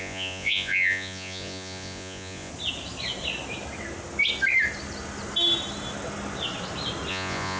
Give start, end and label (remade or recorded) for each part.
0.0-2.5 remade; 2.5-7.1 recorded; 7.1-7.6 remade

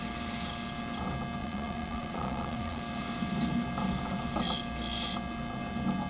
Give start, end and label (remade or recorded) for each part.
0.0-1.4 recorded; 1.4-2.8 remade; 2.8-6.1 recorded

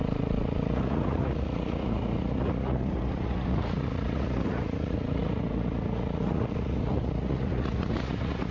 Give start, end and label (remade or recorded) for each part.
0.0-8.5 remade

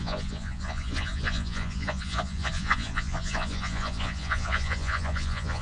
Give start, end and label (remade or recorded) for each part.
0.0-5.6 remade

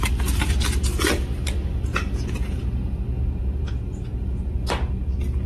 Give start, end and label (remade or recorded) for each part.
0.0-1.9 recorded; 1.9-2.6 remade; 2.6-3.4 recorded; 3.4-4.4 remade; 4.4-5.5 recorded

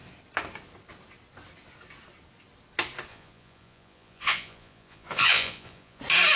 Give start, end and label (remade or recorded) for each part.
0.0-3.1 recorded; 3.1-6.0 remade; 6.0-6.4 recorded

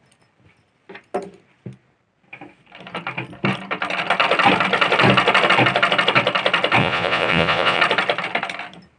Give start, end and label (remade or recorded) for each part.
0.0-6.8 recorded; 6.8-7.8 remade; 7.8-9.0 recorded